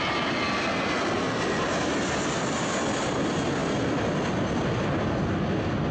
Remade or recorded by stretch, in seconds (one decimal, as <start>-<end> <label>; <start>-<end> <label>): 0.0-5.9 recorded